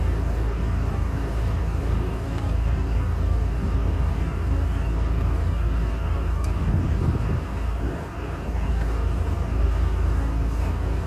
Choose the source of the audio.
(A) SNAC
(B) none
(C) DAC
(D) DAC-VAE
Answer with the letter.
C